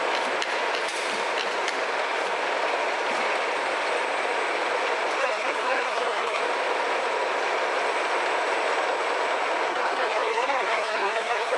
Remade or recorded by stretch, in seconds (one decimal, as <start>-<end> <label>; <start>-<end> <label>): 0.0-5.2 recorded; 5.2-6.4 remade; 6.4-9.7 recorded; 9.7-11.6 remade